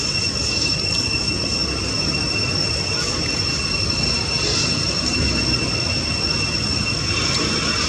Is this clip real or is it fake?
real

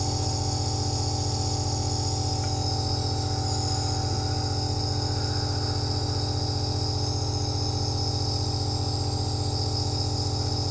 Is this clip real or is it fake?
real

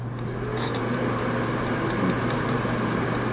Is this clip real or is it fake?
fake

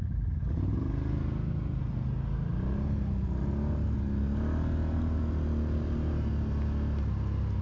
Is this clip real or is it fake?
real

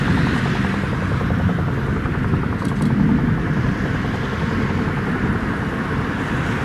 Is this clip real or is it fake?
real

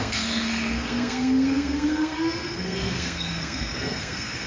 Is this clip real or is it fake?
fake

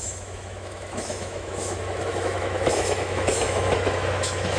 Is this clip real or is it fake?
fake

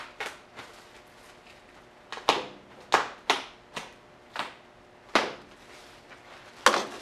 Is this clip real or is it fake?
real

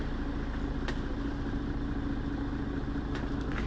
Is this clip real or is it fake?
real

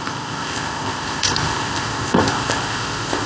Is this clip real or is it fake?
fake